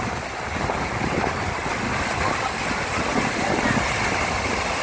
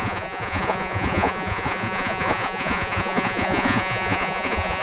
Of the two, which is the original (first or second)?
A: first